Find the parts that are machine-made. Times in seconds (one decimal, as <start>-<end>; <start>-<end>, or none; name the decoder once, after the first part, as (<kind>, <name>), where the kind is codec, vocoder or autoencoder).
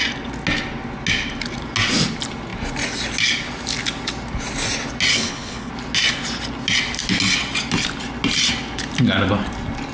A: 5.1-5.7 (codec, HILCodec)